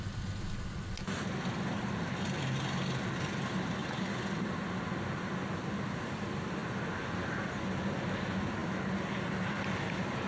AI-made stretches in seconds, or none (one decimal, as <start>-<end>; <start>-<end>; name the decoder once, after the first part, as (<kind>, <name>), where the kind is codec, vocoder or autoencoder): none